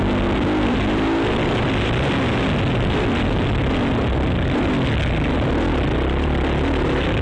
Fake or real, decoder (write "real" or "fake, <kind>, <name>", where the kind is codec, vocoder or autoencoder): real